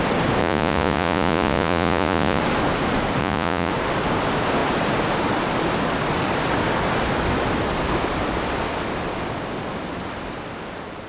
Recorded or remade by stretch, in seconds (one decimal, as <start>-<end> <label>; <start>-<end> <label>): 0.0-0.4 recorded; 0.4-2.4 remade; 2.4-3.2 recorded; 3.2-3.7 remade; 3.7-11.1 recorded